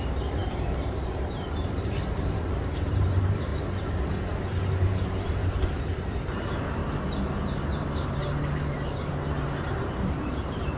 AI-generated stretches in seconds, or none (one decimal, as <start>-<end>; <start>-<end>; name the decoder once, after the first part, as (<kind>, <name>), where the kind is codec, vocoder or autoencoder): 0.0-3.5 (vocoder, BigVGAN v2); 4.8-5.4; 6.1-6.8; 9.7-10.8